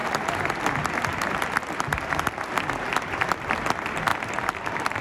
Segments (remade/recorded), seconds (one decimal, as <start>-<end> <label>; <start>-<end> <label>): 0.0-5.0 recorded